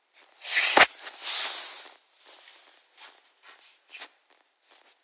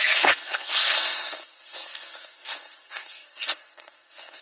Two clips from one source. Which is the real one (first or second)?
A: first